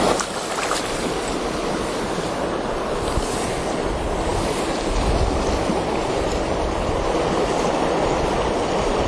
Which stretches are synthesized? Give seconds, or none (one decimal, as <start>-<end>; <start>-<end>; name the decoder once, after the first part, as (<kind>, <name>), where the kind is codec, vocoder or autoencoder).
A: none